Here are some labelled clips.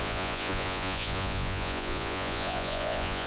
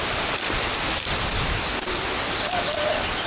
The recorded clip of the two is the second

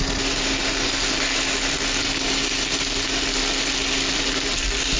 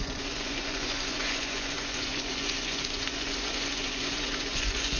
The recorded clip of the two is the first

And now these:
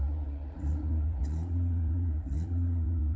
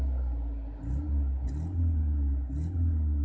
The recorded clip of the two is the second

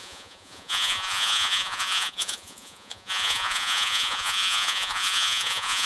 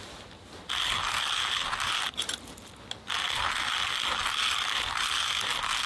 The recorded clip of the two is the second